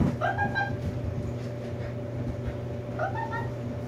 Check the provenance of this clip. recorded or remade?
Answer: recorded